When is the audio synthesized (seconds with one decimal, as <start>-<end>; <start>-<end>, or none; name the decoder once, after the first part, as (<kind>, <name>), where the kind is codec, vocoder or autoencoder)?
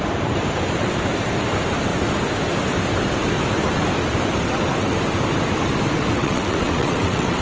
6.2-7.4 (vocoder, WaveNeXt)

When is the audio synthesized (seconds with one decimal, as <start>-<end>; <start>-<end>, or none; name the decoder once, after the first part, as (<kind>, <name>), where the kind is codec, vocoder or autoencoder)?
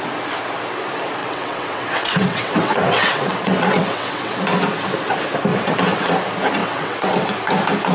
1.2-4.4 (vocoder, WaveNeXt); 5.5-6.1; 6.6-7.3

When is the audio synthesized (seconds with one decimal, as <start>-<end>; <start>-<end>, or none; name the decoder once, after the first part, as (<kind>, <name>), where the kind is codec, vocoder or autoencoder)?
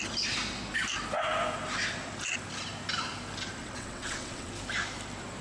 3.6-4.5 (vocoder, WaveNeXt)